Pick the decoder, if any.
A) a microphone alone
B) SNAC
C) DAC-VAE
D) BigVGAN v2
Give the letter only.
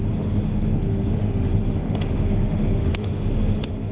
C